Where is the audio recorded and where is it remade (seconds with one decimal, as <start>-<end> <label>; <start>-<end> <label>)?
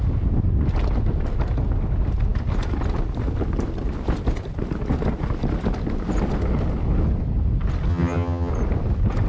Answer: 0.0-7.9 recorded; 7.9-8.5 remade; 8.5-9.3 recorded